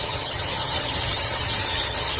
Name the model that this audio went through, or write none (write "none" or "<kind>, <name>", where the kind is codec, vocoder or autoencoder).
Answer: vocoder, HiFi-GAN